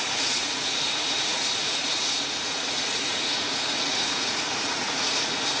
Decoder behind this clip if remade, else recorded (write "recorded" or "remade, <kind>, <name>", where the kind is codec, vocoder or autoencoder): remade, vocoder, Vocos